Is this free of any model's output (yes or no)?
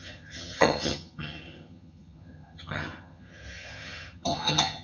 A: no